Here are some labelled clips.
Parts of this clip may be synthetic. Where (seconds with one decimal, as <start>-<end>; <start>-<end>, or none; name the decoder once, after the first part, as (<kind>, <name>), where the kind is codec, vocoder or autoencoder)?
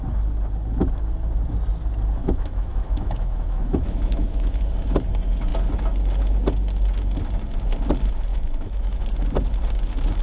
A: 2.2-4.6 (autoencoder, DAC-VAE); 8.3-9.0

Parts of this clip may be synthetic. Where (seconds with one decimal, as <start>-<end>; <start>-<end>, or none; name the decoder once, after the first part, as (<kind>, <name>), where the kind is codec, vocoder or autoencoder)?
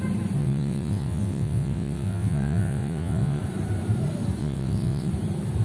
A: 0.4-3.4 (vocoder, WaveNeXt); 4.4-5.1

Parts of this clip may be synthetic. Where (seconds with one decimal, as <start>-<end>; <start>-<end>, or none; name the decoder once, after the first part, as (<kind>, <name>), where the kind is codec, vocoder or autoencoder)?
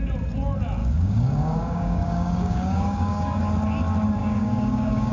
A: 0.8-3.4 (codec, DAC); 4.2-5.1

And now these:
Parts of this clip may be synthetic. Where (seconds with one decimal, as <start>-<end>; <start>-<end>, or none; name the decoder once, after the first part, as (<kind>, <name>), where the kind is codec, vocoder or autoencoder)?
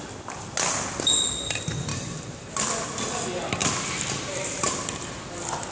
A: 1.9-2.5 (vocoder, BigVGAN v2)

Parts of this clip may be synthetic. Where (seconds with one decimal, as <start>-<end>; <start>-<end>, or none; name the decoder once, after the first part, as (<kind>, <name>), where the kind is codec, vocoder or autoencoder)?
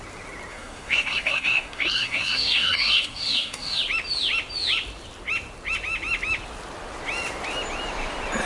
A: 0.5-3.8 (codec, SNAC)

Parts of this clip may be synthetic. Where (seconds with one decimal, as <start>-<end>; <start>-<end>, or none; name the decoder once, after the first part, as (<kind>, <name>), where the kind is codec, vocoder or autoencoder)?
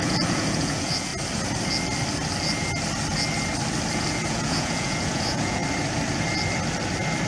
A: 0.0-1.1 (vocoder, Vocos); 3.9-5.6